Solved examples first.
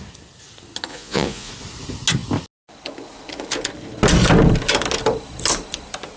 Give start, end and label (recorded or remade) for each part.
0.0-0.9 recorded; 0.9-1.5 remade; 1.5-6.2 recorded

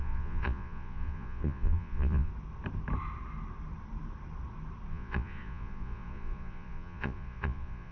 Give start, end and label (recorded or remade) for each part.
0.0-2.3 remade; 2.3-4.9 recorded; 4.9-7.9 remade

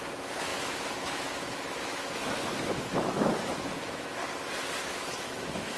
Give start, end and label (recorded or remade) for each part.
0.0-4.2 remade; 4.2-4.8 recorded; 4.8-5.8 remade

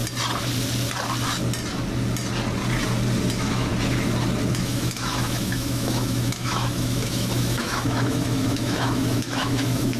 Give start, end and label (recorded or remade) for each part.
0.0-3.3 recorded; 3.3-3.7 remade; 3.7-4.5 recorded; 4.5-10.0 remade

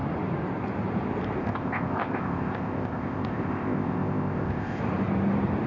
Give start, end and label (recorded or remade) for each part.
0.0-1.4 recorded; 1.4-4.8 remade; 4.8-5.7 recorded

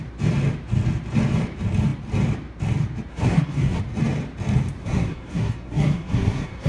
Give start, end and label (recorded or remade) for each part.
0.0-3.1 recorded; 3.1-3.8 remade; 3.8-4.8 recorded; 4.8-6.7 remade